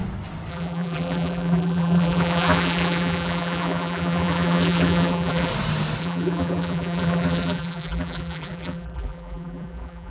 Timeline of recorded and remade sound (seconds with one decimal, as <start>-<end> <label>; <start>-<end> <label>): 0.0-0.5 recorded; 0.5-5.5 remade; 5.5-6.0 recorded; 6.0-10.1 remade